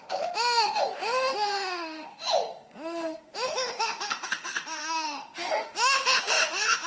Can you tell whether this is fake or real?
fake